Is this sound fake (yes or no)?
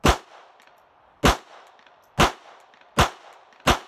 no